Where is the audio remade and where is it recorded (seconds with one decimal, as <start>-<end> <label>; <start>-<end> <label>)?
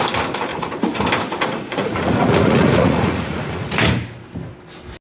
0.0-0.5 recorded; 0.5-1.0 remade; 1.0-1.5 recorded; 1.5-3.7 remade; 3.7-5.0 recorded